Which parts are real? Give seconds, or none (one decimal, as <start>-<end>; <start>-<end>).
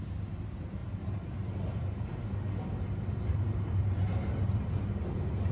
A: 0.0-5.5